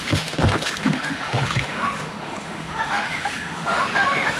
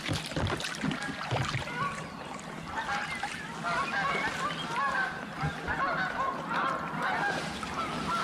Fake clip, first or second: first